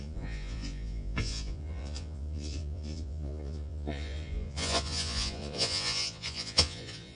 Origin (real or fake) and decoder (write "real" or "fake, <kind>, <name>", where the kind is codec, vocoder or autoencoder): fake, vocoder, Vocos